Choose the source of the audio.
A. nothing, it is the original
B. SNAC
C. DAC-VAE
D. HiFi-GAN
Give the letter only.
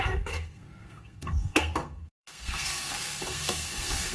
B